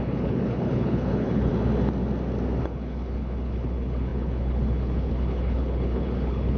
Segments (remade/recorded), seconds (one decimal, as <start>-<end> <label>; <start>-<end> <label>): 0.0-1.5 remade; 1.5-2.6 recorded; 2.6-6.6 remade